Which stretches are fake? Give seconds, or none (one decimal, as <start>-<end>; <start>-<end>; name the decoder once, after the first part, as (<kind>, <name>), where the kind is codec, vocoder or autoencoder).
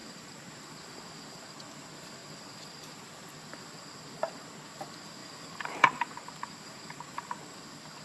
0.0-0.7 (vocoder, BigVGAN v2); 5.2-7.4